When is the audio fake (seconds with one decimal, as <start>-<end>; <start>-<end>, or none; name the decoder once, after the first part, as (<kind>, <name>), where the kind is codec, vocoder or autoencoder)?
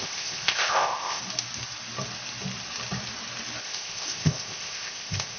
0.0-1.2 (codec, ZipCodec); 3.6-5.4